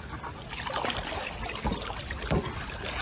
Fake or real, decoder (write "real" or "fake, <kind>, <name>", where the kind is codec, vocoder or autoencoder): real